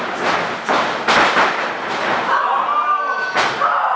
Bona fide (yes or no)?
yes